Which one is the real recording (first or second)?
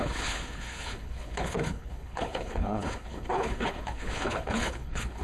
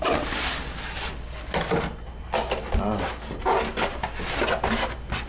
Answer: second